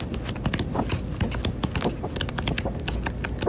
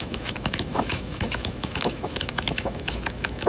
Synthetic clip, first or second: second